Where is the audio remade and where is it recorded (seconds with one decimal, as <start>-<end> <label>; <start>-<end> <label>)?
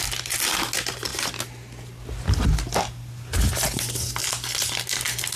0.0-5.4 recorded